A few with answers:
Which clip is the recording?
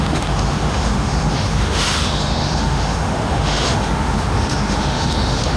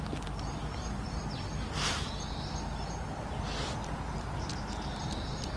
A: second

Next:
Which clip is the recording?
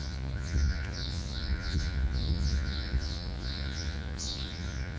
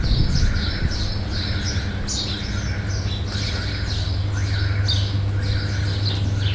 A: second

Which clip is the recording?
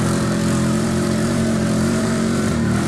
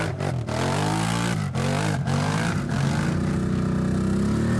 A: second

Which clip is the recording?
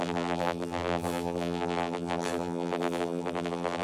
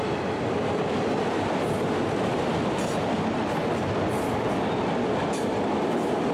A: second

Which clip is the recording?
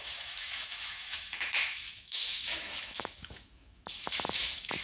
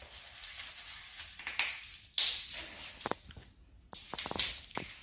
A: second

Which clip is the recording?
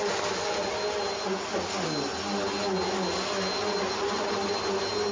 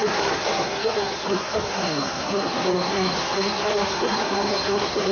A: first